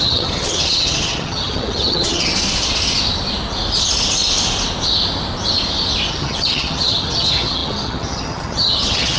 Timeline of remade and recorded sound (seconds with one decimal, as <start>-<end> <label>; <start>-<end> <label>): 0.0-2.3 remade; 2.3-6.1 recorded; 6.1-9.2 remade

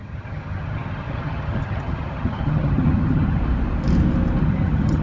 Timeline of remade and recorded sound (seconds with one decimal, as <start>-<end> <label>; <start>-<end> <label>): 0.0-3.4 remade; 3.4-4.4 recorded; 4.4-5.0 remade

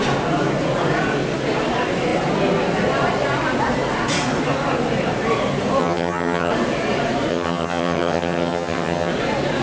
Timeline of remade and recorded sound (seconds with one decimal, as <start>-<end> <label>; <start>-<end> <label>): 0.0-5.8 recorded; 5.8-6.5 remade; 6.5-7.3 recorded; 7.3-9.1 remade; 9.1-9.6 recorded

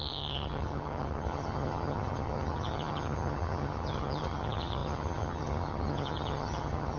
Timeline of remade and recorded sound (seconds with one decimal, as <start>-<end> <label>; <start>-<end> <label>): 0.0-7.0 remade

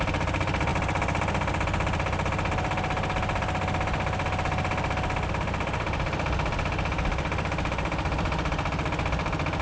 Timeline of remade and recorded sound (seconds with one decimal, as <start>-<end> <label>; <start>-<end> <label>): 0.0-9.6 recorded

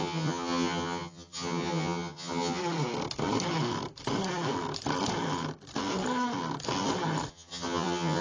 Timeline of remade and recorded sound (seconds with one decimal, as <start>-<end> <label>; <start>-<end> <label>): 0.0-2.6 remade; 2.6-7.3 recorded; 7.3-8.2 remade